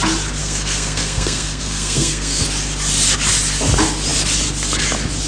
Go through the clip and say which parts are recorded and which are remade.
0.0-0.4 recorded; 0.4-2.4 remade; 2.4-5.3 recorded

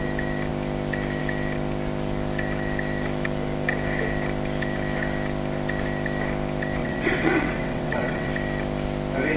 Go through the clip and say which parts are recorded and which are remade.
0.0-6.8 recorded; 6.8-8.3 remade; 8.3-9.4 recorded